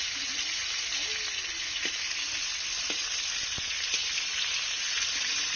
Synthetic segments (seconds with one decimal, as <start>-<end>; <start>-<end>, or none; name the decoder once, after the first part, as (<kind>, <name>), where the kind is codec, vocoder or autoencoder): none